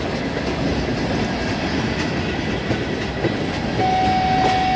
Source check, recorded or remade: recorded